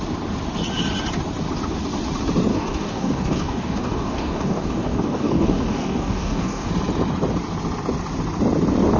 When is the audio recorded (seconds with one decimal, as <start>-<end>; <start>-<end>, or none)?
0.0-2.5; 6.7-9.0

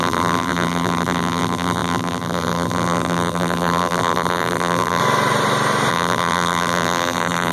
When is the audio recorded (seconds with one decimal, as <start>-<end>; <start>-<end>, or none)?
5.0-5.9

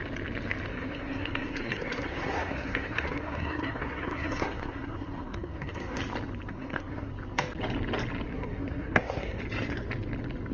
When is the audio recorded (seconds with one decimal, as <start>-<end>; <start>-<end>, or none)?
0.0-0.7; 6.0-6.5; 7.1-8.3; 9.4-10.5

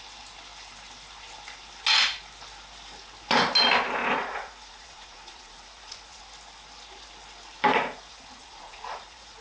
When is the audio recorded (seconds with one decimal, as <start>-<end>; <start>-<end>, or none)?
0.0-4.0; 6.2-7.7